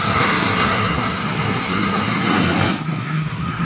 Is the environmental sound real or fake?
fake